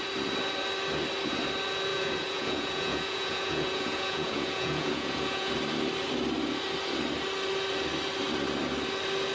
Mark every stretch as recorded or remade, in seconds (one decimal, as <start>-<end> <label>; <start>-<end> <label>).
0.0-1.9 recorded; 1.9-5.5 remade; 5.5-9.3 recorded